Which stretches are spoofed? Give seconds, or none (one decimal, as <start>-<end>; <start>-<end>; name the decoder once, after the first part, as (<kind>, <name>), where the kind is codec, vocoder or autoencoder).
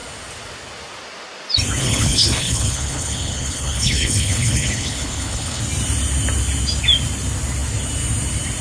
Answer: 1.8-5.6 (codec, HILCodec)